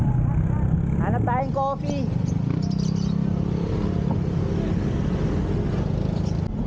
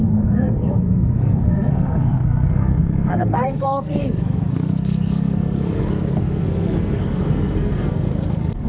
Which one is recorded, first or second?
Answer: first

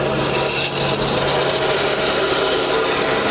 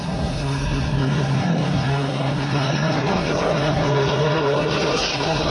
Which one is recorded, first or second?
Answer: first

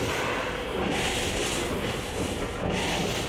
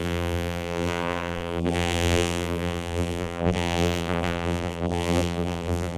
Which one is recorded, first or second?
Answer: first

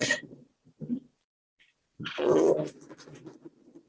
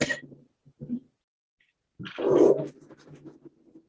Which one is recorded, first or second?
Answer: second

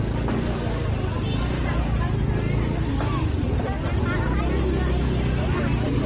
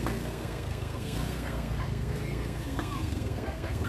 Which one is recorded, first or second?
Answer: first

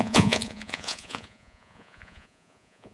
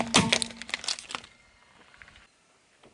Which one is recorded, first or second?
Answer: second